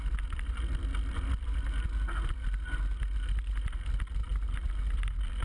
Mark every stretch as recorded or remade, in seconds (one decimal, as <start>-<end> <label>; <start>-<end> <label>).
0.0-5.4 recorded